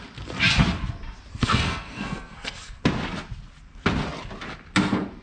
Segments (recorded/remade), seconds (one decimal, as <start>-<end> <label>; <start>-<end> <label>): 0.0-1.3 recorded; 1.3-2.8 remade; 2.8-5.2 recorded